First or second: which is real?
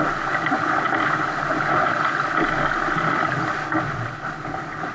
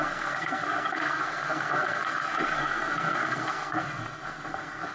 first